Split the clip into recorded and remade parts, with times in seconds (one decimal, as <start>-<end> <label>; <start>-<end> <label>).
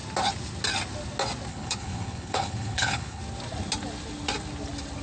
0.0-1.5 recorded; 1.5-3.2 remade; 3.2-5.0 recorded